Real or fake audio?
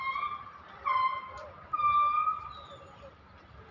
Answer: real